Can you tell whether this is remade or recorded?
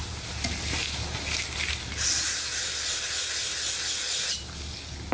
recorded